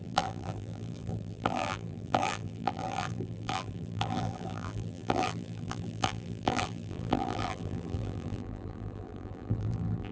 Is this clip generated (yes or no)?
yes